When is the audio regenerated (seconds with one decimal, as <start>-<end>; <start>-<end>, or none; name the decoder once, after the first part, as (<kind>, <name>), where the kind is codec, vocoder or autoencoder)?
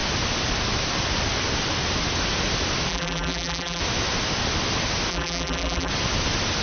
2.9-3.8 (vocoder, BigVGAN v2); 5.1-5.9